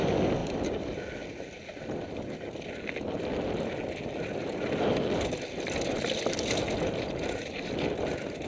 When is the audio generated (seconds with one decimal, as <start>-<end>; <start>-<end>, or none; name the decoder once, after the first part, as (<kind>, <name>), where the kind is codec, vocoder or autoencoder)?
0.4-1.3 (vocoder, BigVGAN v2)